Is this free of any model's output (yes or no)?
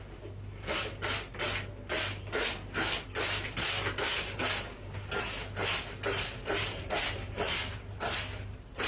yes